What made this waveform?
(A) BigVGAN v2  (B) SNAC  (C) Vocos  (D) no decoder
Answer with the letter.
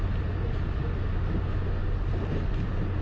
D